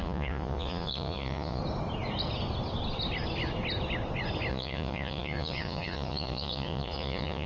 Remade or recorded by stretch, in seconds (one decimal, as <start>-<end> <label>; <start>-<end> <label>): 0.0-1.6 remade; 1.6-4.5 recorded; 4.5-7.5 remade